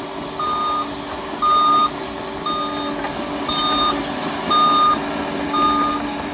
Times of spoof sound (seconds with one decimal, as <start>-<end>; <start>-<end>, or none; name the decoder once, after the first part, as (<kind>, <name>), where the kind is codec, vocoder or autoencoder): none